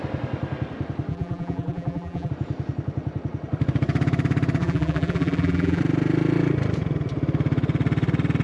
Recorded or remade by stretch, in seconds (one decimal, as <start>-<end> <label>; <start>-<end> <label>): 0.0-1.1 recorded; 1.1-2.3 remade; 2.3-4.6 recorded; 4.6-5.8 remade; 5.8-8.4 recorded